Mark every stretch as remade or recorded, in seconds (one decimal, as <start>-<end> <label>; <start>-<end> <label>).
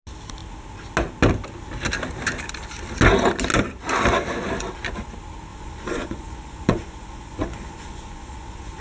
0.0-5.5 recorded; 5.5-8.8 remade